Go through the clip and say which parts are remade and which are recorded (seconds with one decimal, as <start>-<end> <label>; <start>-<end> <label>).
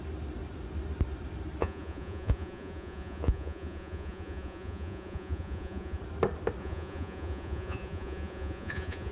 0.0-1.6 recorded; 1.6-6.0 remade; 6.0-6.6 recorded; 6.6-9.1 remade